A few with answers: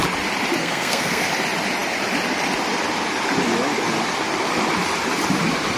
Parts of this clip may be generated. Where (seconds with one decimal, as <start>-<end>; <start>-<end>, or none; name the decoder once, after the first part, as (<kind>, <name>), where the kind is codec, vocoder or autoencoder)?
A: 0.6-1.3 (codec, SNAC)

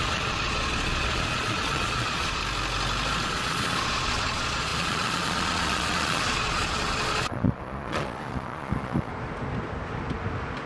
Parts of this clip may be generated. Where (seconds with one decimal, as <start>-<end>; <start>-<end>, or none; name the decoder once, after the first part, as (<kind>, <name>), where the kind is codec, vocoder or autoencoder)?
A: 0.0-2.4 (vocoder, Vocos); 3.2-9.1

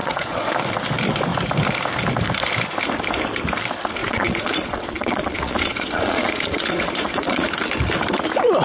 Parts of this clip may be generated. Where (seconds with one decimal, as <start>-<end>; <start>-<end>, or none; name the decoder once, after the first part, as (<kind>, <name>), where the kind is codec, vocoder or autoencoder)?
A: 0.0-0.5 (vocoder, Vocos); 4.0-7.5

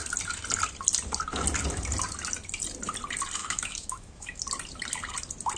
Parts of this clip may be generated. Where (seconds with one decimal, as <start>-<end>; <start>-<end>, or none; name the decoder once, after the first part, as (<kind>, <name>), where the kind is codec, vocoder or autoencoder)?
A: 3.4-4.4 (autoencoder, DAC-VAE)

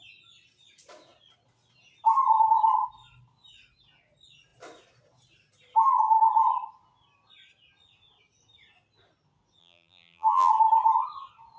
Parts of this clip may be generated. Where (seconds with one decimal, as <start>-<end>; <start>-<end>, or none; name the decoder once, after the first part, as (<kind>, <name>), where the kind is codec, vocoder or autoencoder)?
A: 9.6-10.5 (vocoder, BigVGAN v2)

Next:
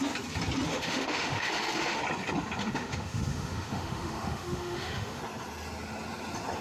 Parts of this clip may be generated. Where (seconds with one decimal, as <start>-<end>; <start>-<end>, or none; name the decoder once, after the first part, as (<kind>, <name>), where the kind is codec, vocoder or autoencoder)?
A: 0.7-2.0 (autoencoder, DAC-VAE); 2.6-5.2